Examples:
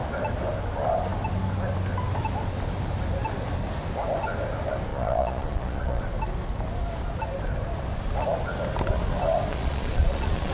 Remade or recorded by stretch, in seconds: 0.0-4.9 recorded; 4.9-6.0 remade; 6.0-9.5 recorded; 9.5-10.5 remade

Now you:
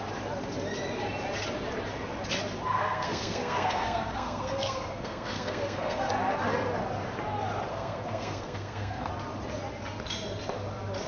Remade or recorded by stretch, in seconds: 0.0-2.7 recorded; 2.7-6.1 remade; 6.1-7.7 recorded; 7.7-9.1 remade; 9.1-11.1 recorded

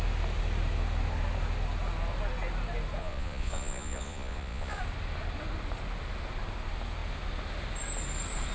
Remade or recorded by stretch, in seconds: 0.0-3.0 recorded; 3.0-4.8 remade; 4.8-8.5 recorded

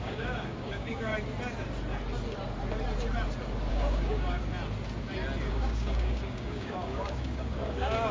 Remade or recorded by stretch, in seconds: 0.0-1.1 remade; 1.1-3.7 recorded; 3.7-4.4 remade; 4.4-5.5 recorded; 5.5-8.1 remade

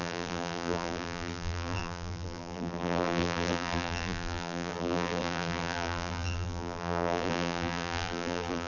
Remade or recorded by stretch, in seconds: 0.0-8.7 remade